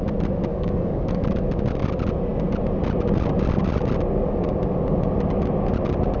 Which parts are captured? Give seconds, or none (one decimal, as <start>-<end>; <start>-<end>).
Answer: 0.0-0.5; 1.4-6.2